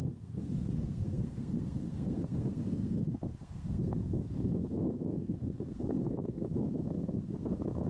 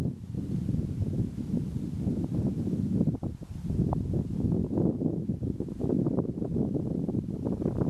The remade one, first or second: first